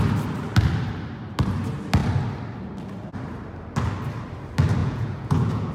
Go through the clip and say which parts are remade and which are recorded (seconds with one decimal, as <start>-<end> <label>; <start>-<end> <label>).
0.0-4.8 recorded; 4.8-5.7 remade